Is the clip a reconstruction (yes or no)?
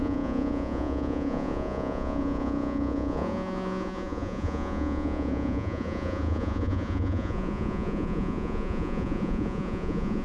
yes